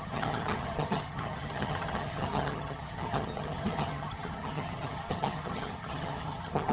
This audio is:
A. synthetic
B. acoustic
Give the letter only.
A